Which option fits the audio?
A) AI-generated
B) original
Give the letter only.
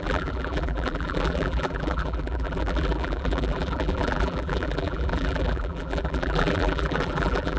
A